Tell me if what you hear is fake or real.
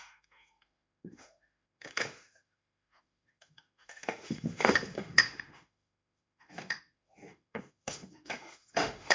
fake